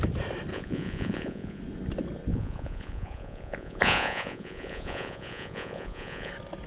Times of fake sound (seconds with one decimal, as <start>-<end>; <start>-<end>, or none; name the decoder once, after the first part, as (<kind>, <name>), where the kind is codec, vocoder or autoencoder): 0.5-1.6 (vocoder, Vocos); 2.3-6.3